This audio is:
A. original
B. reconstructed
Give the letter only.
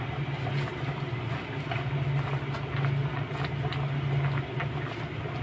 A